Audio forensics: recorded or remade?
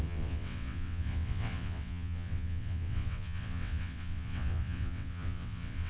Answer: remade